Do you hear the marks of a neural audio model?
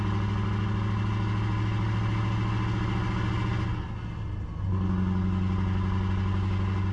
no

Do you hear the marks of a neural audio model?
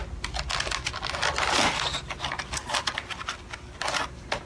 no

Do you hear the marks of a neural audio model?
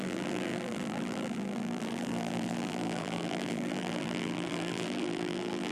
yes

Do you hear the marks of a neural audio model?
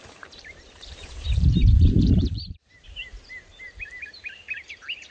yes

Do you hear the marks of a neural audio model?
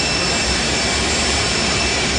yes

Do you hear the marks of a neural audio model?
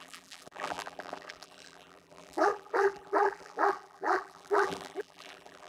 yes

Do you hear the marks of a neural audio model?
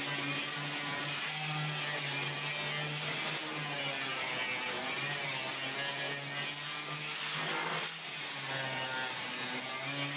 no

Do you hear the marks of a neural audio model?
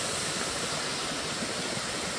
no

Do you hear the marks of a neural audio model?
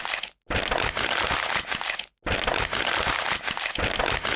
no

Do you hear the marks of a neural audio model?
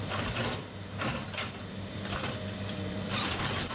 yes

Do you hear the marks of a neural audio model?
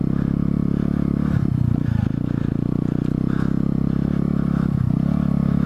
no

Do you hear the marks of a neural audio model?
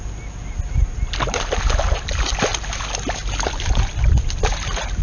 no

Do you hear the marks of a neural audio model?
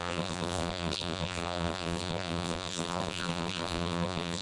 yes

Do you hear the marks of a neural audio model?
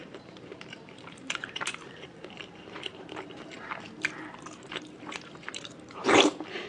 yes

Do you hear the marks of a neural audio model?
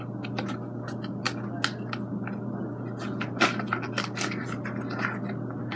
no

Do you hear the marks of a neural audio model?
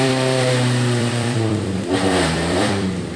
yes